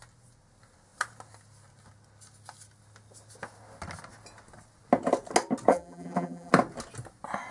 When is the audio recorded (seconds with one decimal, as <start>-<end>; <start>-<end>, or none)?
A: 0.0-5.7; 6.5-7.5